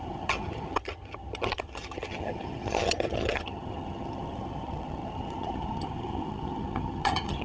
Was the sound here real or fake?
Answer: fake